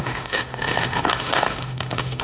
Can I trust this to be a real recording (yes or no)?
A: no